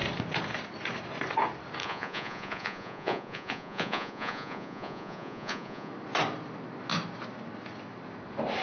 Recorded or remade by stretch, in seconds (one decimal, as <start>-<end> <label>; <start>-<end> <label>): 0.0-1.8 recorded; 1.8-5.9 remade; 5.9-8.6 recorded